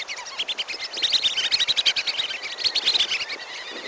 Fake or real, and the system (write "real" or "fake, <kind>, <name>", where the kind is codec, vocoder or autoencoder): real